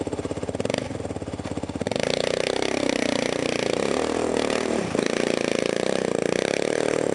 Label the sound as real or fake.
fake